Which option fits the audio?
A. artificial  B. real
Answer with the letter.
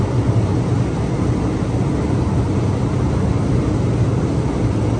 B